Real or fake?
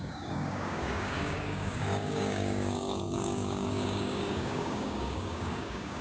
fake